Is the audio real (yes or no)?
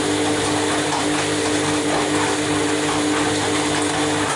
yes